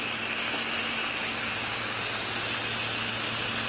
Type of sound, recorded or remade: recorded